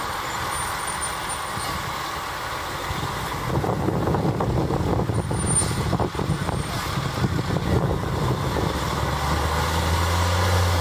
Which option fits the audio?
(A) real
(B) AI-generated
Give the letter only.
A